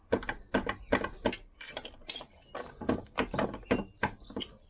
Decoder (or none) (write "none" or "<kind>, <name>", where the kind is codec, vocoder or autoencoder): none